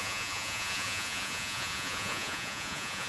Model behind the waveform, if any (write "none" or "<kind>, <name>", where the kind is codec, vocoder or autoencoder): vocoder, Vocos